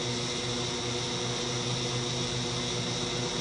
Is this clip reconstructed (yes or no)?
no